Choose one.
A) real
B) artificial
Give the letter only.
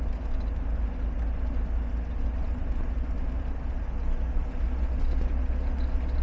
A